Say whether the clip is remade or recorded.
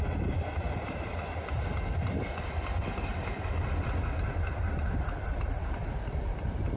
remade